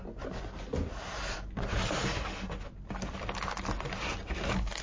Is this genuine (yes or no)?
yes